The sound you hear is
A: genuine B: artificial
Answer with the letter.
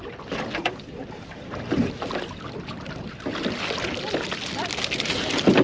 A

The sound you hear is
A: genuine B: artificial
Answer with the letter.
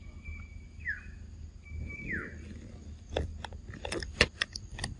A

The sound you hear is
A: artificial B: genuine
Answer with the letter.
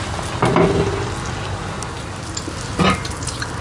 B